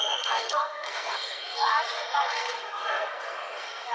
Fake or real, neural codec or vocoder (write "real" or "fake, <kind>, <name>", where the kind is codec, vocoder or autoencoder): fake, codec, SNAC